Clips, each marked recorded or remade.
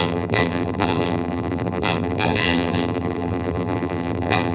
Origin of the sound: remade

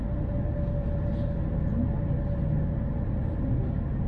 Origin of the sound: recorded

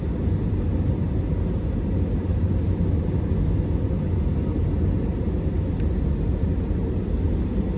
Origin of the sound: recorded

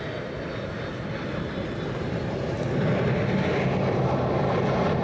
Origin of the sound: recorded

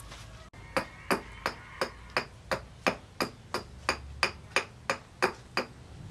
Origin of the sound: recorded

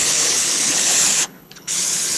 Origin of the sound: remade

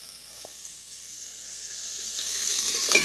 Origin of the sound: remade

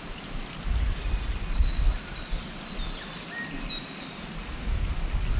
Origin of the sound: recorded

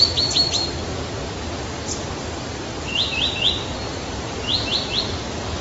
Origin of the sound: recorded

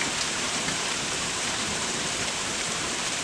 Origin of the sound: remade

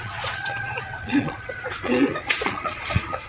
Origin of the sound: remade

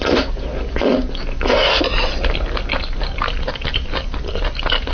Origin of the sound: recorded